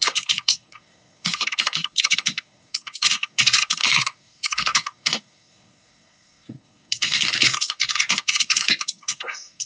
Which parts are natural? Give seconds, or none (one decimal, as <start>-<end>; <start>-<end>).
none